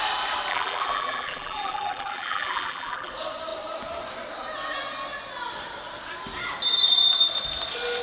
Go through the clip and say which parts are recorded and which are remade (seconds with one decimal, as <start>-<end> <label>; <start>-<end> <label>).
0.0-0.5 recorded; 0.5-3.1 remade; 3.1-8.0 recorded